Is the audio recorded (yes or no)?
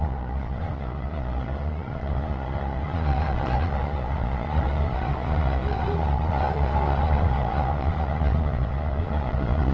no